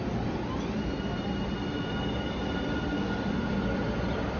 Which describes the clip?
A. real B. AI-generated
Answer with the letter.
A